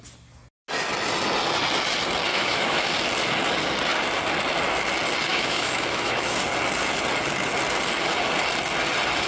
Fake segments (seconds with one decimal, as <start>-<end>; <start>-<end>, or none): 2.3-2.9; 5.3-6.4